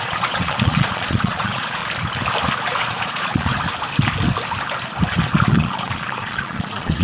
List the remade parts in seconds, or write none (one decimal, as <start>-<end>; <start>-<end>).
0.0-1.8; 2.8-3.5; 5.5-7.0